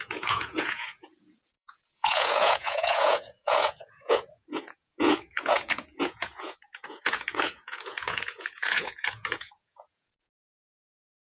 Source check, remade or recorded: remade